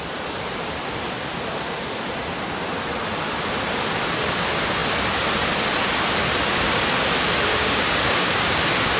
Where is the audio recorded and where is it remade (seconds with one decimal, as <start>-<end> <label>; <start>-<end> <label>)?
0.0-7.5 recorded; 7.5-8.5 remade; 8.5-9.0 recorded